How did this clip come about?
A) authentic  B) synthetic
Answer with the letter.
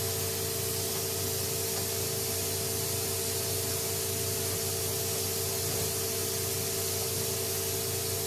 A